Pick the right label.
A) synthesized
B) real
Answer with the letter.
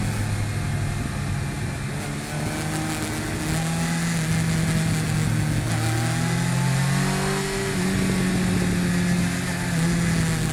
B